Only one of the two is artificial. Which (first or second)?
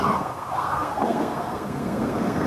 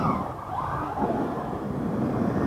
first